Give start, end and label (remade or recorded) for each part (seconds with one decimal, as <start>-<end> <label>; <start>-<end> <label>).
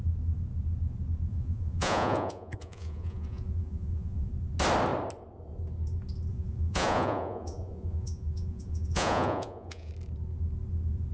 0.0-1.3 recorded; 1.3-4.3 remade; 4.3-6.3 recorded; 6.3-9.9 remade; 9.9-11.1 recorded